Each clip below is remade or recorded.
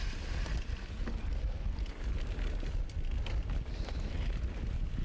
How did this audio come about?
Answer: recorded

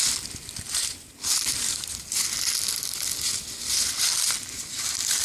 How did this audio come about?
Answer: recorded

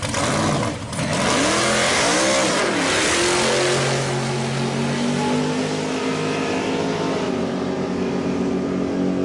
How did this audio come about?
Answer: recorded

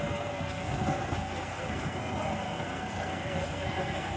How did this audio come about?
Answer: remade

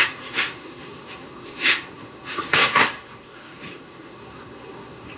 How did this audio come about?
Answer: remade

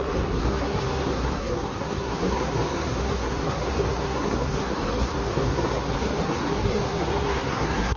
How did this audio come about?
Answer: remade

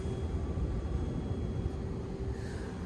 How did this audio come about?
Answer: recorded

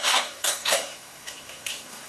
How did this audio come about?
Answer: remade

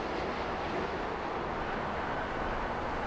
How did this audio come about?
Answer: recorded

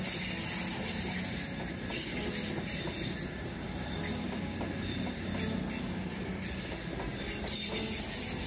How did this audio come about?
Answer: recorded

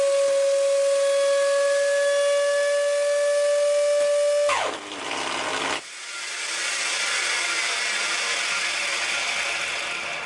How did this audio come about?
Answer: recorded